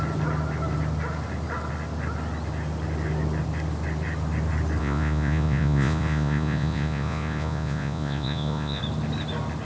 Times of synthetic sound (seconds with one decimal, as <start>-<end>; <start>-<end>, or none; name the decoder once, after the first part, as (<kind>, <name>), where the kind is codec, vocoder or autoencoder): 4.8-8.8 (vocoder, Vocos)

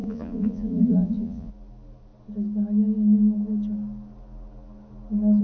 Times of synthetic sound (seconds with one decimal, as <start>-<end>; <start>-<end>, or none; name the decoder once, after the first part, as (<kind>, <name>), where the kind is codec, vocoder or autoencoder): 0.0-1.5 (vocoder, Vocos)

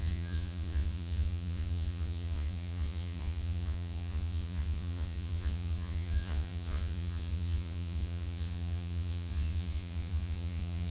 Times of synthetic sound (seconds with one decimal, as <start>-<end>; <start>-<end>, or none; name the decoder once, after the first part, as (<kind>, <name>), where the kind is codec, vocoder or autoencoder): 0.0-10.9 (vocoder, Vocos)

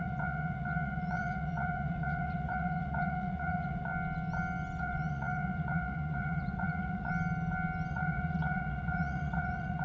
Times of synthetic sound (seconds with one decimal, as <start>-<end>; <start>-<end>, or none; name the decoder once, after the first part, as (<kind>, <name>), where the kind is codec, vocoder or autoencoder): 0.0-3.9 (vocoder, Vocos); 4.8-7.1; 7.9-9.8

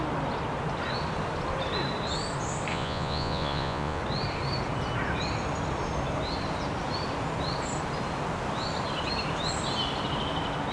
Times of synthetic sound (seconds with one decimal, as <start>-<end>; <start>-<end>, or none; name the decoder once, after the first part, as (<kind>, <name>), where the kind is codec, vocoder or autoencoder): 2.7-4.0 (vocoder, Vocos)

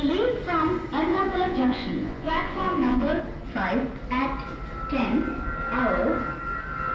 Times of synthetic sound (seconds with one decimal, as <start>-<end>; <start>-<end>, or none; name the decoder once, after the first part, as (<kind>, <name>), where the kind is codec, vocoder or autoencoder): 1.1-3.2 (vocoder, Vocos)

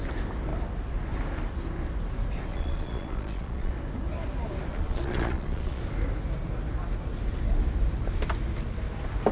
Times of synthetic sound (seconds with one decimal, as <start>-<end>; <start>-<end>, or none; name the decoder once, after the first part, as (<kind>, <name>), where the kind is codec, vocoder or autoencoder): 2.5-3.7 (vocoder, Vocos); 4.7-5.8

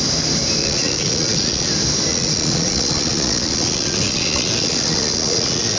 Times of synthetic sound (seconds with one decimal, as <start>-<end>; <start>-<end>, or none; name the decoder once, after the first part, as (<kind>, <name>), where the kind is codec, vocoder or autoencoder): 0.6-1.7 (vocoder, Vocos); 2.1-5.8